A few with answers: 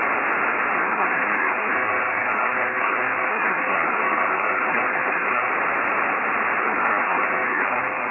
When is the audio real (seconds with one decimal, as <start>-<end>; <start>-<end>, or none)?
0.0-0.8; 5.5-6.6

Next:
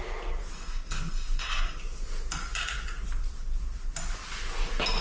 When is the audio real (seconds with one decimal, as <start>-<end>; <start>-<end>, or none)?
0.0-0.5; 1.8-5.0

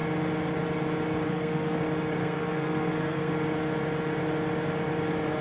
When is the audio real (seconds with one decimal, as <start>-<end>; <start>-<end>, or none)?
0.0-1.3; 1.8-2.2; 3.3-5.4

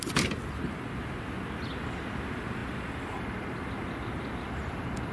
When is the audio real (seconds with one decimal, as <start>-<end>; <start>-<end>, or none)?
0.0-5.1

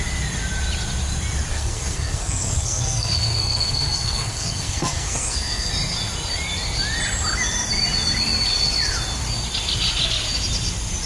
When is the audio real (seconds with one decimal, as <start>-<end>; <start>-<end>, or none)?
0.0-1.5; 5.7-11.1

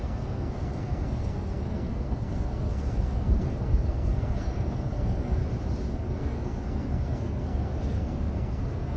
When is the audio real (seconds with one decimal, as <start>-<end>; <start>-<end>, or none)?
5.4-5.9

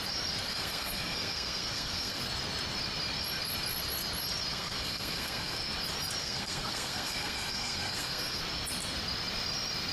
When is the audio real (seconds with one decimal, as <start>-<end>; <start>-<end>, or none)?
0.0-0.5; 2.2-4.5; 5.6-6.2; 8.4-9.9

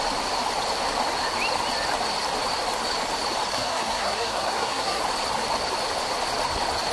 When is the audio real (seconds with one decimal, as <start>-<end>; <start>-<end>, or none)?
0.0-3.5; 5.0-6.9